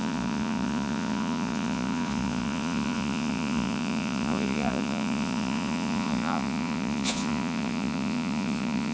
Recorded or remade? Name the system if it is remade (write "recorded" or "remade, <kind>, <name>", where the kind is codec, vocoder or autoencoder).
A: remade, vocoder, Vocos